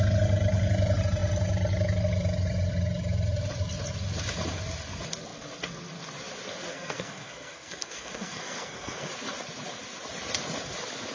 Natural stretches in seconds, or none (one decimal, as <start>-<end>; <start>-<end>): 0.0-6.7; 9.1-11.1